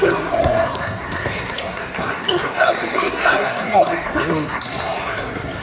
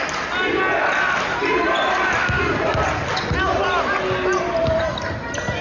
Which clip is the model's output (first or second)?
first